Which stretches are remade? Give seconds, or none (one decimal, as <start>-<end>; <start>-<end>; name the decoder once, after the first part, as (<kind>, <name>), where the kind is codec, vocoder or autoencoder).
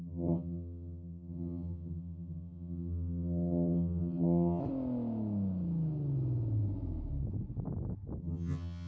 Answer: 0.0-4.6 (vocoder, HiFi-GAN); 8.2-8.9